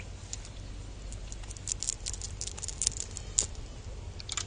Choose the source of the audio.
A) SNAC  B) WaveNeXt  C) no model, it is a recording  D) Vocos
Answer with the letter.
C